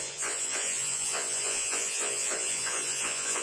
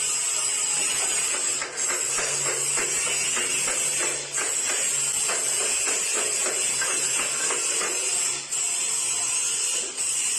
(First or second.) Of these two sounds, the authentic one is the second